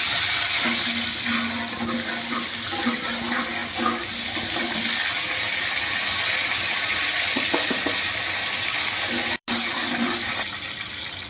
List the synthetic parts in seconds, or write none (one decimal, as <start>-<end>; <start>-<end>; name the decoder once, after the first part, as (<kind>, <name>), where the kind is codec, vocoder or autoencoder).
none